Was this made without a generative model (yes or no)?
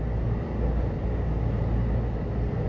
yes